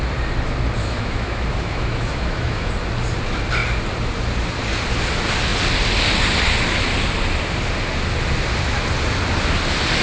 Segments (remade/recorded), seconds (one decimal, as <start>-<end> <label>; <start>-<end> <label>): 0.0-0.8 recorded; 0.8-2.7 remade; 2.7-10.0 recorded